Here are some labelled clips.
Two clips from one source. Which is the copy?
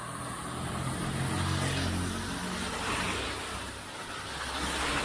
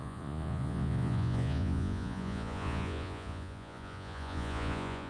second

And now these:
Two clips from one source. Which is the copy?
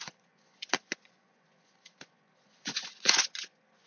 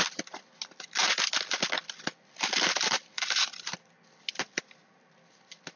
first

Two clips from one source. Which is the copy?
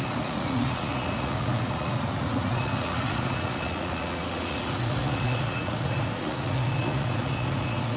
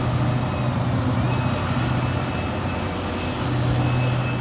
first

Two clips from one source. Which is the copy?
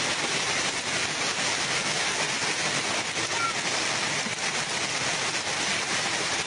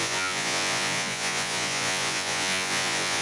second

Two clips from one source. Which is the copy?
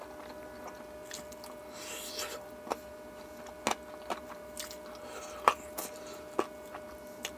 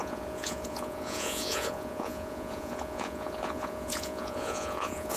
second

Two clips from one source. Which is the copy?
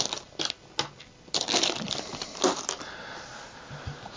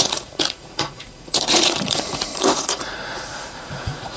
second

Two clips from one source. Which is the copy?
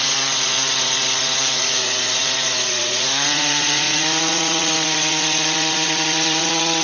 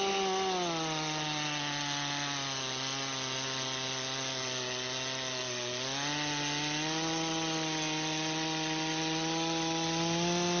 first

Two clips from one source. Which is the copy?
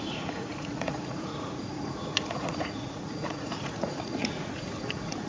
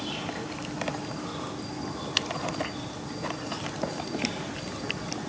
first